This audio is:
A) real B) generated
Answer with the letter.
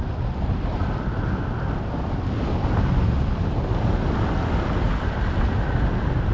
A